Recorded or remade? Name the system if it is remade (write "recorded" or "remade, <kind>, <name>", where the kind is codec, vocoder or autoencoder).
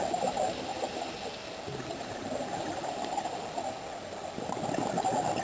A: recorded